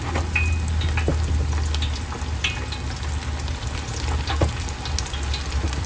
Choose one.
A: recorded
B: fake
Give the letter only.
A